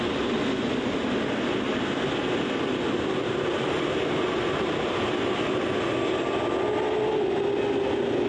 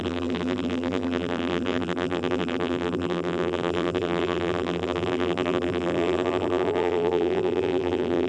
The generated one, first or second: second